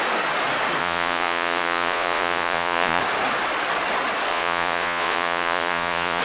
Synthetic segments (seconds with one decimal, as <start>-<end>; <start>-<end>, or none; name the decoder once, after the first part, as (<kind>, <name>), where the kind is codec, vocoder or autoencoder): 0.8-3.0 (vocoder, Vocos); 4.3-6.2